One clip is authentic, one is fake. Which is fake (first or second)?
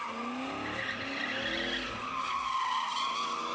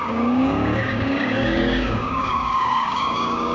second